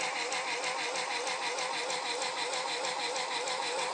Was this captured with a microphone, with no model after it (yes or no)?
yes